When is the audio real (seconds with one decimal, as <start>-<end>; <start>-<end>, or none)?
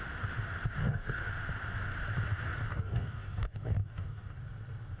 0.0-0.8; 1.3-2.7; 4.4-5.0